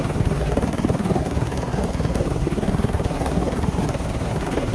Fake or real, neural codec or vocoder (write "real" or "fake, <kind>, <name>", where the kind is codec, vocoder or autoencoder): fake, codec, SNAC